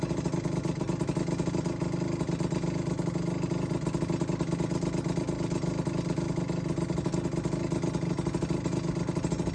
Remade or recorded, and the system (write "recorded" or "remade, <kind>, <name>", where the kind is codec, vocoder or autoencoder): recorded